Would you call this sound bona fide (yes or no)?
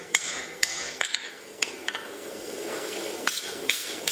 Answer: no